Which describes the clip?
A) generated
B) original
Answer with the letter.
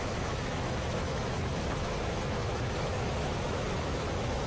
A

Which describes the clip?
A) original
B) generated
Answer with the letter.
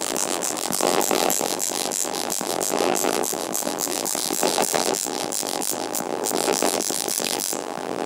B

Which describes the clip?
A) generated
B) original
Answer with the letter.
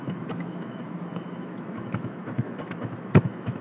A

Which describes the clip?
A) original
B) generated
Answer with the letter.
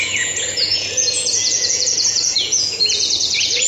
B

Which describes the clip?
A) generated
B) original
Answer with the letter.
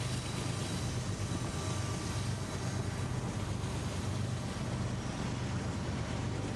B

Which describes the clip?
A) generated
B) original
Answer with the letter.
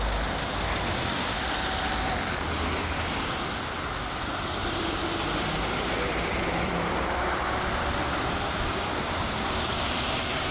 A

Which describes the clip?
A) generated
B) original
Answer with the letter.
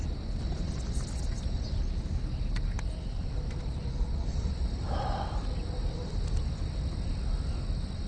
B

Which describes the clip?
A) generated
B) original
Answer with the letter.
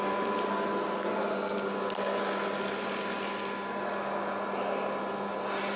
B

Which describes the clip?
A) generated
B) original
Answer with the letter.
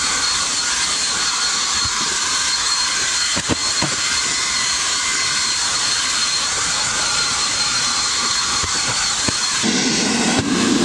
A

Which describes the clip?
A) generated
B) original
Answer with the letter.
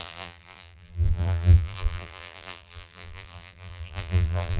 A